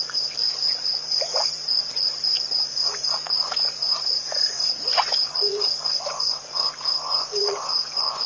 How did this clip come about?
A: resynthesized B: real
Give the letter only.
A